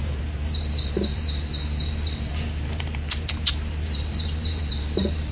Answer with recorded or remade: remade